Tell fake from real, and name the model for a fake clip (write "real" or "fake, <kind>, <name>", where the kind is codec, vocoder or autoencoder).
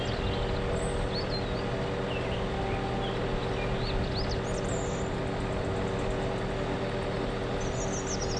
real